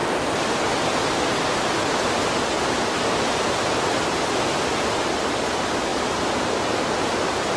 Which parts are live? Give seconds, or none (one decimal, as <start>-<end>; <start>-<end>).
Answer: 0.0-7.6